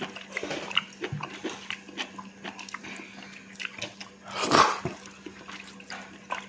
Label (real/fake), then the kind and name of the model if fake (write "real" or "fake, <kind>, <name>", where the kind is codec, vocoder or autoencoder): real